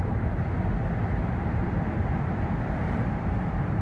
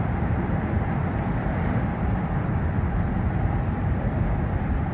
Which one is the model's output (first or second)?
second